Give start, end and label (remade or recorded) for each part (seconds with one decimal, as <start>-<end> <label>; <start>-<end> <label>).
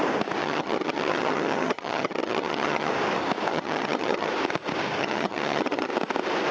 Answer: 0.0-0.4 recorded; 0.4-2.9 remade; 2.9-3.5 recorded; 3.5-4.3 remade; 4.3-5.0 recorded; 5.0-5.9 remade; 5.9-6.5 recorded